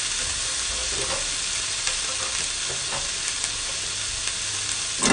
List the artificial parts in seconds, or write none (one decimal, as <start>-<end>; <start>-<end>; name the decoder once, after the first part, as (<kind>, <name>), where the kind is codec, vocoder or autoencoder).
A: none